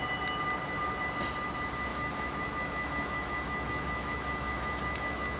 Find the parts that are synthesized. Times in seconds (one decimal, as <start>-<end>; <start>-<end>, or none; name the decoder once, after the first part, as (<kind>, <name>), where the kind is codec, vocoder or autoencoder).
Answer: 1.9-5.4 (autoencoder, DAC-VAE)